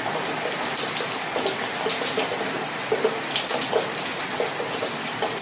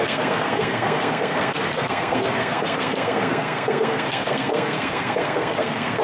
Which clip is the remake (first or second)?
second